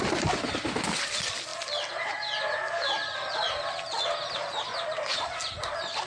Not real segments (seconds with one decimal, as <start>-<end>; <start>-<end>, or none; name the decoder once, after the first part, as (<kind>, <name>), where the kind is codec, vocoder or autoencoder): none